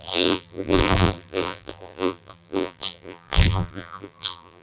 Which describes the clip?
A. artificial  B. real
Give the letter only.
A